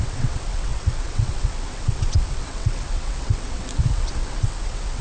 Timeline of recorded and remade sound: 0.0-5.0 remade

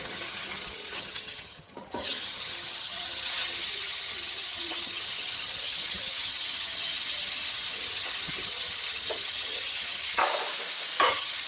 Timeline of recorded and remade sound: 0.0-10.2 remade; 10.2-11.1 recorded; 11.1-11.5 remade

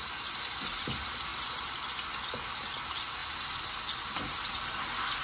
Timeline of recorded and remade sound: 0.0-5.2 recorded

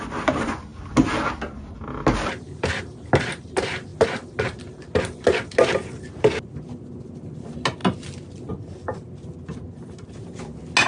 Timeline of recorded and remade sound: 0.0-10.9 recorded

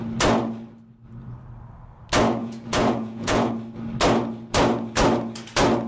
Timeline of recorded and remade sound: 0.0-2.4 recorded; 2.4-3.5 remade; 3.5-5.9 recorded